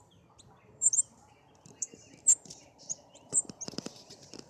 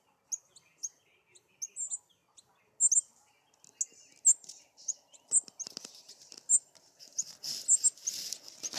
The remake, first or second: first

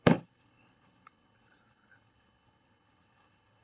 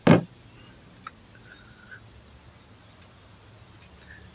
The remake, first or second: first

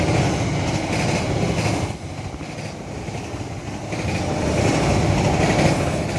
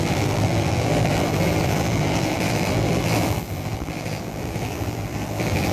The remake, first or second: second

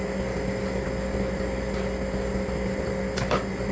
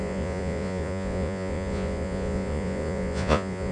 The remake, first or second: second